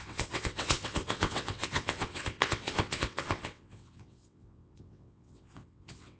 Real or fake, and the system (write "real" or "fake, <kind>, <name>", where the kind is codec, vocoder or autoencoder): fake, vocoder, WaveNeXt